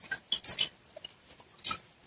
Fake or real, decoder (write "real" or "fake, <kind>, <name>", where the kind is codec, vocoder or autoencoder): real